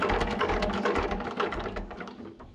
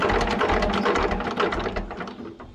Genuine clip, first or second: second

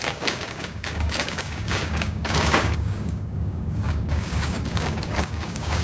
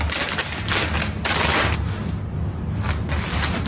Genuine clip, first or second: second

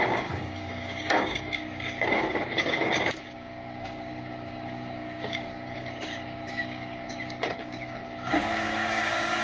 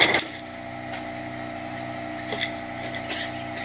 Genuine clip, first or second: second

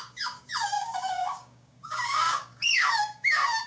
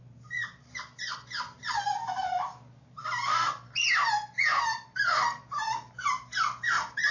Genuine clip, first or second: second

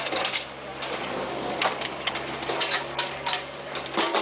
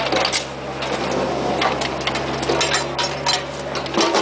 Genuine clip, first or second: second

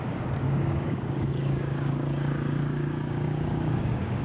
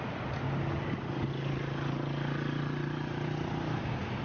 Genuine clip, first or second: second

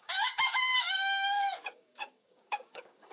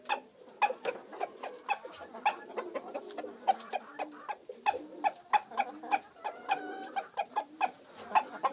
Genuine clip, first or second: second